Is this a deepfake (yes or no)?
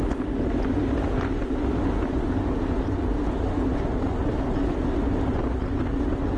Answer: no